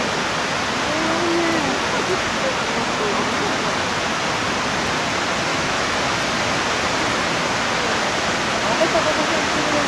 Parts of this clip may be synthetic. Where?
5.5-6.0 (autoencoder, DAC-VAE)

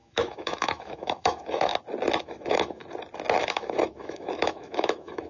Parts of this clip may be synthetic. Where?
0.0-1.7 (autoencoder, DAC-VAE); 2.2-2.8; 3.4-5.3

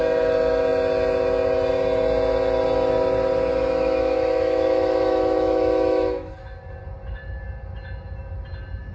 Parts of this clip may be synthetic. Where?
3.5-6.3 (autoencoder, DAC-VAE)

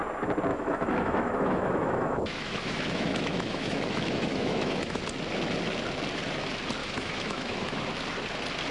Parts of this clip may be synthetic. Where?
0.5-5.0 (autoencoder, DAC-VAE); 6.8-7.8

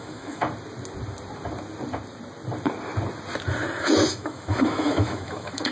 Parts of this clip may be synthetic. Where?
0.0-0.4 (autoencoder, DAC-VAE); 3.8-5.7

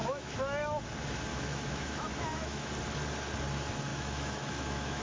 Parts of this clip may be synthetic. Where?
0.0-0.8 (autoencoder, DAC-VAE); 1.3-2.7; 3.9-5.0